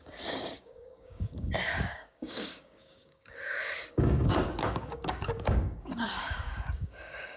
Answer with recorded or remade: remade